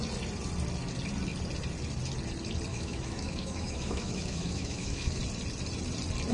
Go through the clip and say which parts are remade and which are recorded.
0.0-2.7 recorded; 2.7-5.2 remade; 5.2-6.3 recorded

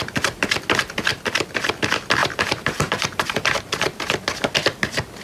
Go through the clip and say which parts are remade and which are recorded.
0.0-2.2 recorded; 2.2-3.6 remade; 3.6-5.2 recorded

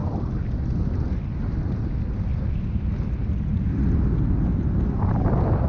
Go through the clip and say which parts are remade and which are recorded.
0.0-5.7 recorded

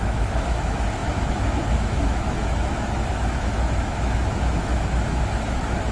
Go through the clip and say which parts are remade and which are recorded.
0.0-5.9 remade

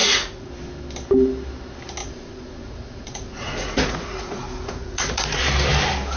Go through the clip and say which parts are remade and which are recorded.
0.0-0.5 remade; 0.5-2.0 recorded; 2.0-5.4 remade; 5.4-6.2 recorded

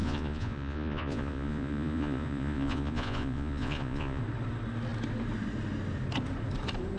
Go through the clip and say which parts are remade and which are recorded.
0.0-4.2 remade; 4.2-7.0 recorded

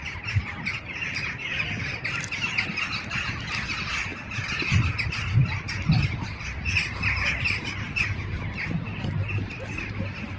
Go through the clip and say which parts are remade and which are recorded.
0.0-1.2 remade; 1.2-10.4 recorded